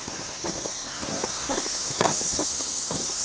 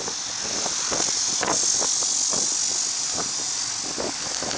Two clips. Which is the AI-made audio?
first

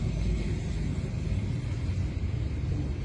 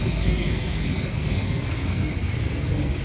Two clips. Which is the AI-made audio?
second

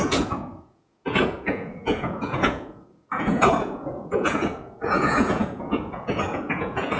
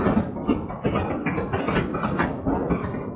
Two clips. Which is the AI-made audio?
first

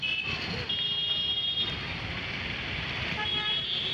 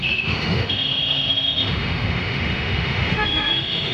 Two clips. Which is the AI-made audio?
second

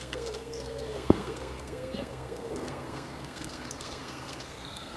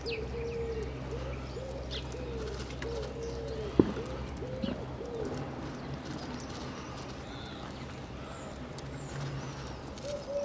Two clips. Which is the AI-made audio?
first